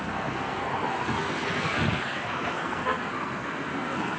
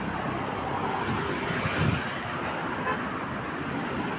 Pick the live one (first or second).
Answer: second